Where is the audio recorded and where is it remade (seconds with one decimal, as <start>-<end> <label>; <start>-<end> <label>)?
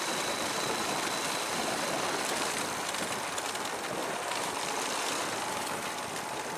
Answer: 0.0-4.0 recorded; 4.0-4.6 remade; 4.6-6.6 recorded